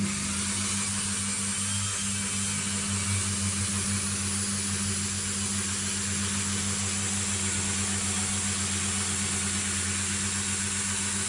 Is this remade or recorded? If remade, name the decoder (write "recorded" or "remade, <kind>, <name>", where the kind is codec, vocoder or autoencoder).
recorded